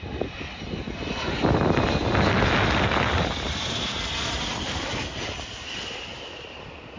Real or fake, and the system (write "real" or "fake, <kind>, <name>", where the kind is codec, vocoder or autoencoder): real